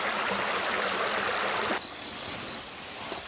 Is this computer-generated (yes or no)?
no